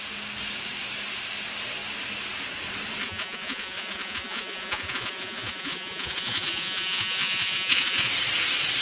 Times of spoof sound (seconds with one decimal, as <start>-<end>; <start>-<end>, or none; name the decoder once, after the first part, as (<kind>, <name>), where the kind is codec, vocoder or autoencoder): 3.0-8.1 (vocoder, Vocos)